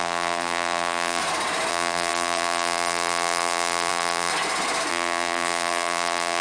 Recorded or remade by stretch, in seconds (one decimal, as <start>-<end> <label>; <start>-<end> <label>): 0.0-1.2 remade; 1.2-1.7 recorded; 1.7-4.3 remade; 4.3-4.9 recorded; 4.9-6.4 remade